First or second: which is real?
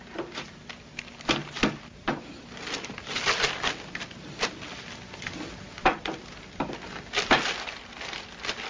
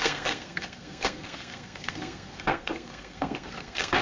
first